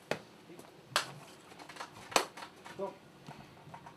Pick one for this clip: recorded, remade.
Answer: recorded